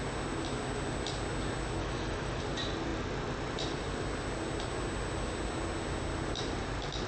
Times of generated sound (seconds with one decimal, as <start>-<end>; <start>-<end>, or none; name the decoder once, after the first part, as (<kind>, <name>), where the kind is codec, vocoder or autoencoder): 1.8-2.4 (autoencoder, DAC-VAE)